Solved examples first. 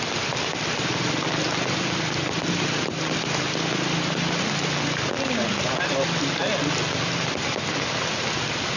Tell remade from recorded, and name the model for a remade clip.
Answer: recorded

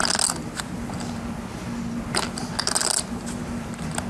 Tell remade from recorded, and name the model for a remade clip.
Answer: recorded